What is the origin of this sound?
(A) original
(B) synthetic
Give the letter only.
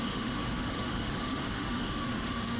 B